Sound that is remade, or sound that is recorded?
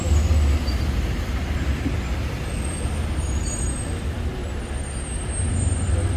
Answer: recorded